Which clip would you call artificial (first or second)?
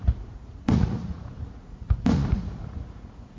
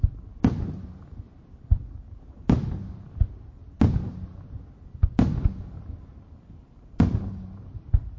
first